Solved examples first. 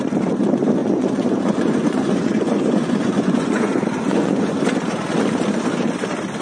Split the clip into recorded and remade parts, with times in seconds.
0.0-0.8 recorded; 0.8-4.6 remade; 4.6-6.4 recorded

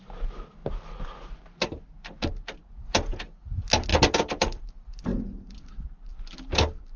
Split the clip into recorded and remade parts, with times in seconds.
0.0-2.6 recorded; 2.6-3.3 remade; 3.3-7.0 recorded

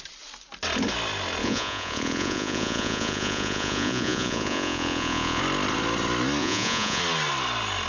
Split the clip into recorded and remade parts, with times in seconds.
0.0-1.4 recorded; 1.4-5.4 remade; 5.4-6.4 recorded; 6.4-7.0 remade; 7.0-7.9 recorded

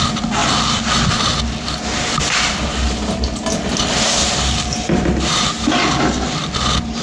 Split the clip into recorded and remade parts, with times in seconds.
0.0-7.0 recorded